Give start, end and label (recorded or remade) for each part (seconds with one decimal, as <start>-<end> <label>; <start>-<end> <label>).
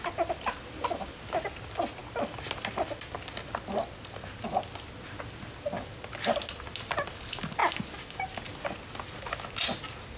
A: 0.0-10.2 recorded